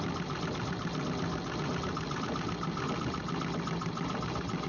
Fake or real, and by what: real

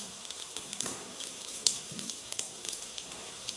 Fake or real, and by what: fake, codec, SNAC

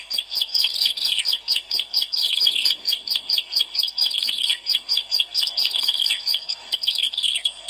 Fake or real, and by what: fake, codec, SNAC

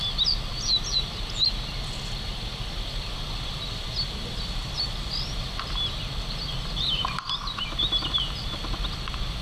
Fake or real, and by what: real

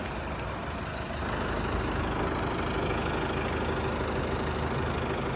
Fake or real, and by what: real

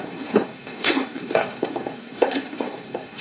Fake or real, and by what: fake, codec, SNAC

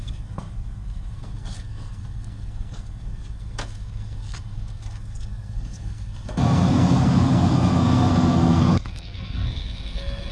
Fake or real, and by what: fake, codec, SNAC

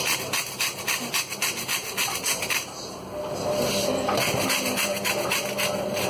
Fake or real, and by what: real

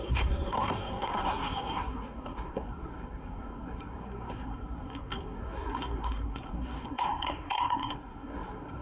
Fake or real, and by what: fake, codec, SNAC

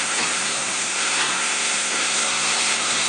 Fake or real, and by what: fake, codec, SNAC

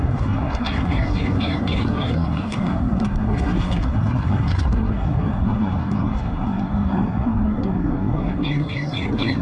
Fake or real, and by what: fake, codec, SNAC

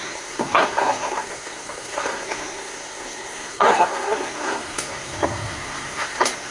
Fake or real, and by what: fake, codec, SNAC